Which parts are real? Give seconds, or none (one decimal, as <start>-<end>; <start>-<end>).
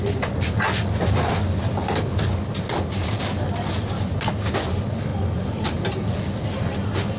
0.0-7.2